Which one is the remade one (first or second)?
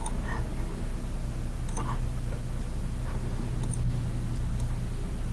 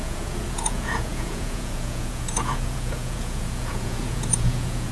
second